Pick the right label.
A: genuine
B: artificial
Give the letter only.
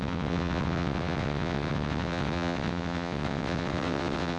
B